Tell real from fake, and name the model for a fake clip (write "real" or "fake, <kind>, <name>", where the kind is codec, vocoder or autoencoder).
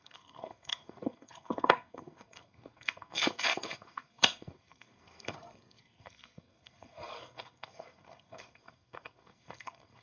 fake, codec, SNAC